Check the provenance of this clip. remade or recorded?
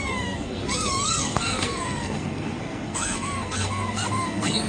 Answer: remade